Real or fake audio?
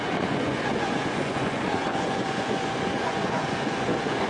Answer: fake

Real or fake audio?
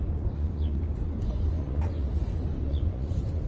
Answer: fake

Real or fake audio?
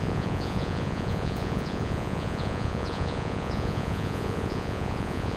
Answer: fake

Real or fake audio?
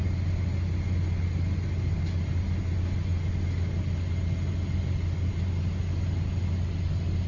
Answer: real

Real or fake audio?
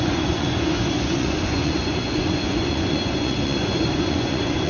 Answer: fake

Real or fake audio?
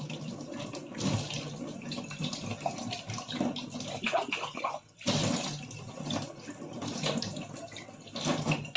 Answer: real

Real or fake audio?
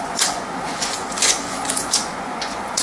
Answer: fake